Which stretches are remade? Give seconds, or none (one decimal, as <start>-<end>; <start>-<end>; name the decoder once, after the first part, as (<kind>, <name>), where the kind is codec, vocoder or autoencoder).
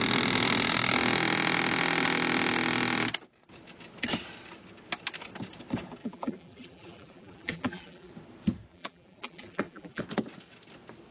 6.0-8.1 (vocoder, BigVGAN v2); 8.7-10.0